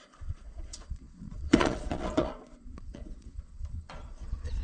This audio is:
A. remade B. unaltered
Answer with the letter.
A